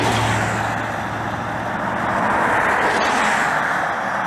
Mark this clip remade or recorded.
recorded